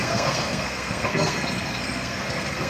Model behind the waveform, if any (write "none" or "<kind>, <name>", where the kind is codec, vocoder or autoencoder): codec, SNAC